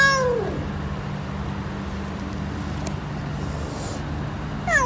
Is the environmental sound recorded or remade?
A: recorded